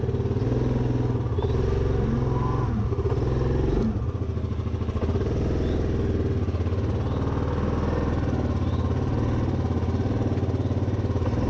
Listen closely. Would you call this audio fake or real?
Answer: real